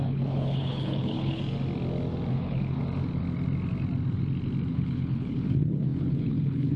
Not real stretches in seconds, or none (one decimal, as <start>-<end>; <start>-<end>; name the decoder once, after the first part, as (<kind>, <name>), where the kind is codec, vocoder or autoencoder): 0.0-1.4 (codec, HILCodec); 2.3-2.8; 4.7-6.8